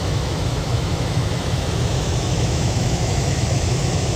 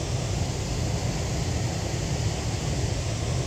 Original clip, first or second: second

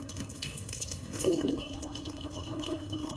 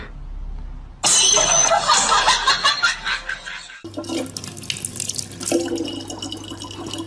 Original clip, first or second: second